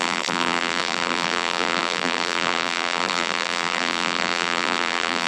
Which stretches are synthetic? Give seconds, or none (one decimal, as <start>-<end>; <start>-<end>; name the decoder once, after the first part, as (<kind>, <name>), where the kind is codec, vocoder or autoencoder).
0.0-5.3 (vocoder, BigVGAN v2)